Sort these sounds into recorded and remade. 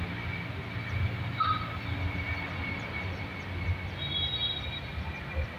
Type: recorded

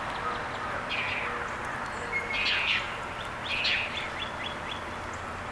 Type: recorded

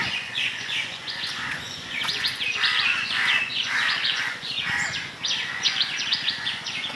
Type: remade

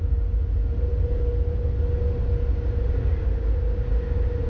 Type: recorded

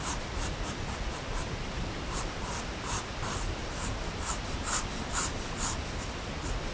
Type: recorded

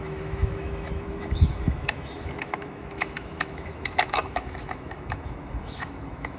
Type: remade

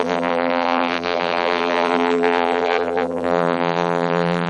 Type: remade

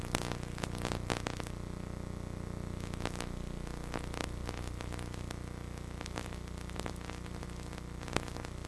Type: recorded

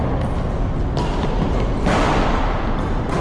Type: recorded